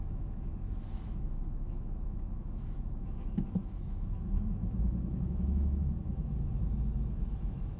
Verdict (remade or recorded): remade